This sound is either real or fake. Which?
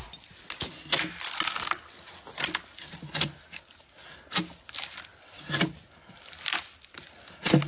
real